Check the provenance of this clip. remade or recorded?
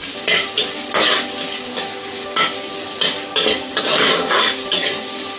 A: recorded